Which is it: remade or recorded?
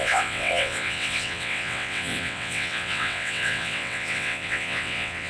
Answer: remade